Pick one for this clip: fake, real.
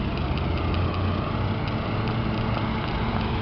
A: real